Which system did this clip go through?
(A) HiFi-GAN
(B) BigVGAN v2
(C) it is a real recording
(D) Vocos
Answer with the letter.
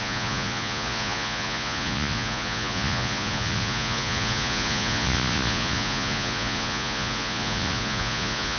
D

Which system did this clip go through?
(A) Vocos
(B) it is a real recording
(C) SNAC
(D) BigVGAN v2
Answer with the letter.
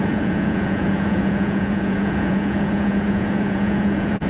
A